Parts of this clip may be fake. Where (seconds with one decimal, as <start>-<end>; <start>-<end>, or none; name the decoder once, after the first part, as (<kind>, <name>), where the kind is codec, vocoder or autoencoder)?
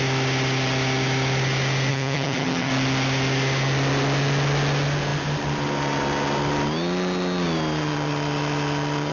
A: 1.9-2.7 (vocoder, HiFi-GAN)